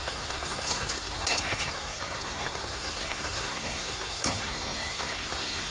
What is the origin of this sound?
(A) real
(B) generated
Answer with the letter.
B